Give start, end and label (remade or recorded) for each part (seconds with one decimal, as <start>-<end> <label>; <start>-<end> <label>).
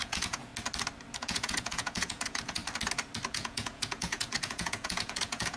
0.0-0.5 remade; 0.5-1.2 recorded; 1.2-2.6 remade; 2.6-3.3 recorded; 3.3-5.6 remade